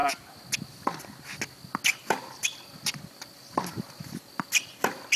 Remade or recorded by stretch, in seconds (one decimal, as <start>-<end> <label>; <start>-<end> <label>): 0.0-2.0 recorded; 2.0-5.2 remade